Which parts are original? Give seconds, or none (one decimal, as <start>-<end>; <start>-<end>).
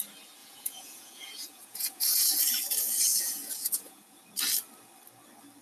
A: 0.0-0.4; 2.4-3.1; 4.2-5.6